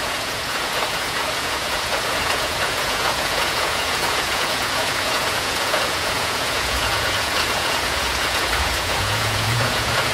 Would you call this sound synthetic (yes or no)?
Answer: yes